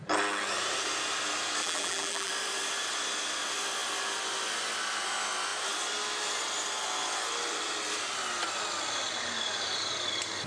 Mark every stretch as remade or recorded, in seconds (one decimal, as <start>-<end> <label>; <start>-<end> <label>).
0.0-1.6 recorded; 1.6-2.3 remade; 2.3-10.5 recorded

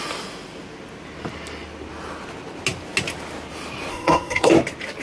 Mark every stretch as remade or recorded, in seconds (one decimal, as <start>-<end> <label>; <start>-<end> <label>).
0.0-3.9 recorded; 3.9-4.5 remade; 4.5-5.0 recorded

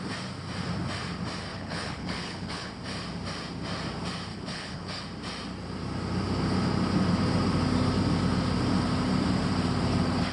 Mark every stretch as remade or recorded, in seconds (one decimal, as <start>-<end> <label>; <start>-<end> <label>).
0.0-1.5 recorded; 1.5-2.7 remade; 2.7-4.3 recorded; 4.3-5.0 remade; 5.0-10.3 recorded

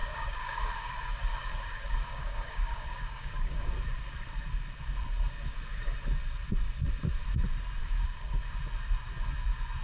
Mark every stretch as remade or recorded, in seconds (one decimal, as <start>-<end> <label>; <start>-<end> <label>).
0.0-0.9 remade; 0.9-1.3 recorded; 1.3-3.7 remade; 3.7-7.8 recorded; 7.8-8.4 remade; 8.4-9.8 recorded

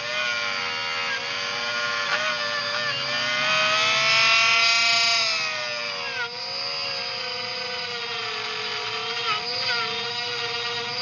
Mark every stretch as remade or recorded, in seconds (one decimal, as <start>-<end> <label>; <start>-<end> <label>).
0.0-11.0 recorded